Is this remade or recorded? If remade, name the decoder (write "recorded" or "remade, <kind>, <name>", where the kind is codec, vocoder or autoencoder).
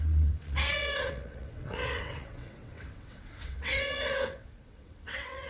remade, vocoder, WaveNeXt